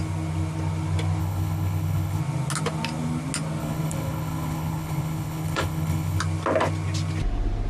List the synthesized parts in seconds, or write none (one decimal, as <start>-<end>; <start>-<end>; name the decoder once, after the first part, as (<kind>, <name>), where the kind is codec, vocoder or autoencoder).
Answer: 1.2-2.2 (codec, HILCodec); 3.6-6.2